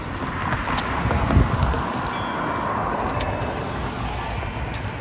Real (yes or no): yes